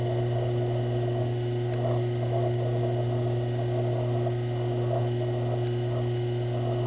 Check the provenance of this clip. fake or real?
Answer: real